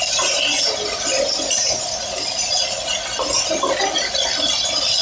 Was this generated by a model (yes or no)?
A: no